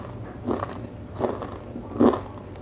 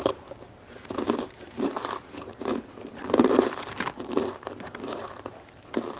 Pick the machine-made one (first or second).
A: second